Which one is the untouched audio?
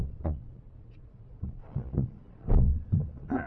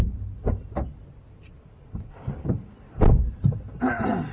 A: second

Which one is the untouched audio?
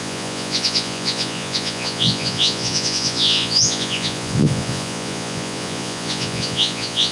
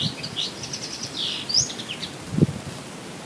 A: second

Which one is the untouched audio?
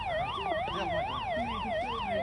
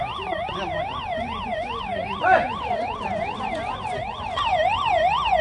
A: first